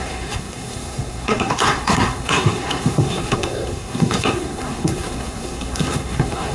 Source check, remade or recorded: remade